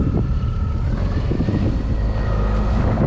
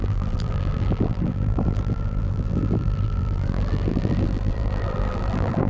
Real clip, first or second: first